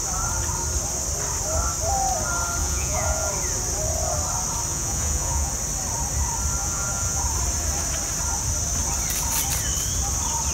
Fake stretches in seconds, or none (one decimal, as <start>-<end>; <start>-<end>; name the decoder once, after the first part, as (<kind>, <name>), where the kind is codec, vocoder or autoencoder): 2.6-3.3 (vocoder, Vocos); 4.7-5.5; 6.6-7.2